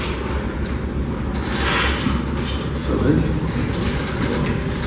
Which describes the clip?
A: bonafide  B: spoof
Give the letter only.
A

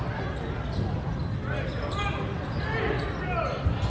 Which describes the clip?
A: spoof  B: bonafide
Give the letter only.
B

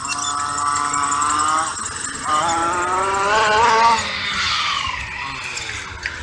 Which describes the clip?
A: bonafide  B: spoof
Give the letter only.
A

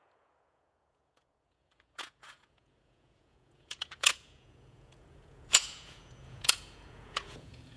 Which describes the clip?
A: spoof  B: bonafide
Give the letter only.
A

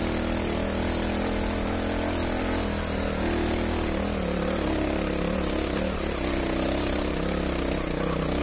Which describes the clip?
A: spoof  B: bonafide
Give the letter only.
B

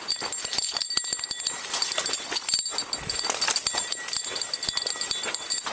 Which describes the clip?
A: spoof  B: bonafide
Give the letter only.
B